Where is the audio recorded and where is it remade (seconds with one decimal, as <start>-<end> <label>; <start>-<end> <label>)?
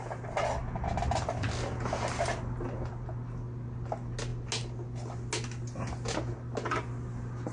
0.0-7.5 recorded